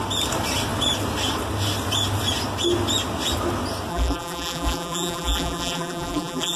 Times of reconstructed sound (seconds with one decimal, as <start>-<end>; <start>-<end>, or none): 3.9-6.6